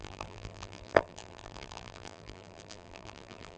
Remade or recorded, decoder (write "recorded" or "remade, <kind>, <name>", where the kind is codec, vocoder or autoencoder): remade, vocoder, BigVGAN v2